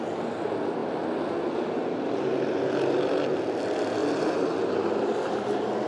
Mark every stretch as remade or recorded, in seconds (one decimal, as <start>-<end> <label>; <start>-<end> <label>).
0.0-5.9 recorded